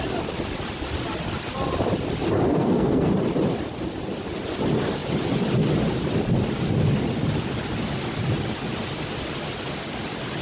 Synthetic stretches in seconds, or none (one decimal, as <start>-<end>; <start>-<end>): 2.5-3.1

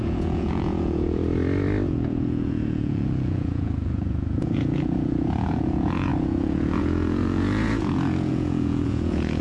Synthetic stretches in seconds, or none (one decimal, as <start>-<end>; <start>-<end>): 0.0-1.2; 1.9-9.4

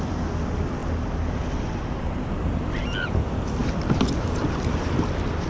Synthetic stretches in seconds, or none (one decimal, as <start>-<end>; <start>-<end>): none

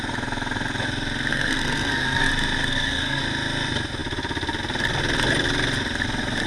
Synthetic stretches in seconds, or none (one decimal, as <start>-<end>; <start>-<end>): 1.3-2.3; 2.7-3.2

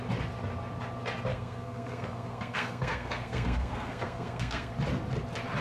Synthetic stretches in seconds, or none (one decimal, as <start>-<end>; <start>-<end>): 1.3-4.7

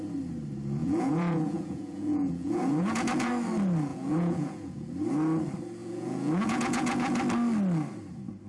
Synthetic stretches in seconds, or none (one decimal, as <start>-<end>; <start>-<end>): 0.8-3.3; 3.9-4.9; 5.8-7.2

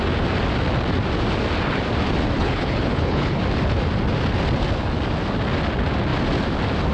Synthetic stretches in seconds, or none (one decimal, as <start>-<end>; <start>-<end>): 2.4-3.4